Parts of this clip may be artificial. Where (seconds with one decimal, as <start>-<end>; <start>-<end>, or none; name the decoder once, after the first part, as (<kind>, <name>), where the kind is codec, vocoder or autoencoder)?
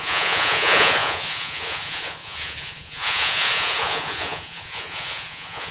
0.0-5.7 (vocoder, Vocos)